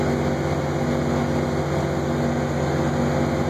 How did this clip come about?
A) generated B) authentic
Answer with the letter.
B